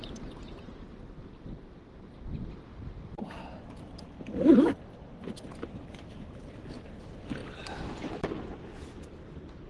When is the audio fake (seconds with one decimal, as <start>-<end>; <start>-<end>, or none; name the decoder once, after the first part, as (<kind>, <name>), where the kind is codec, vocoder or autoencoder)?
3.4-4.4 (vocoder, BigVGAN v2); 7.4-9.2